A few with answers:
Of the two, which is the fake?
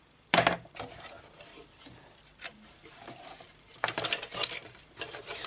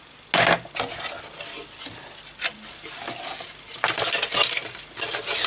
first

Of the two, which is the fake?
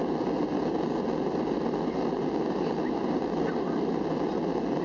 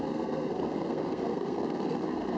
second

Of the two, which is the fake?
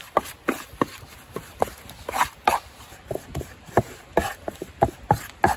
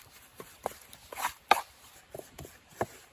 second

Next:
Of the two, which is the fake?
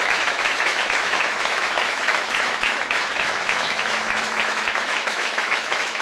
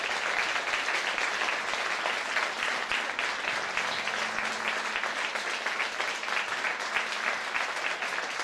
first